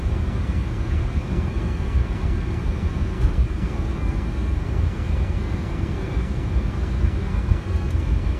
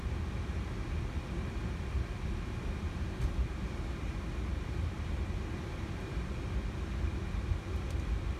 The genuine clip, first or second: second